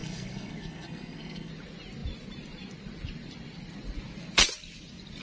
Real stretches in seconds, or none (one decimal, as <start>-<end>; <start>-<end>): 1.5-5.2